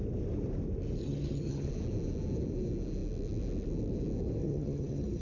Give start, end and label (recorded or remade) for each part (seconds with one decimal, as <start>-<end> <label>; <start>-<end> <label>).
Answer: 0.0-1.0 recorded; 1.0-1.7 remade; 1.7-4.4 recorded; 4.4-5.2 remade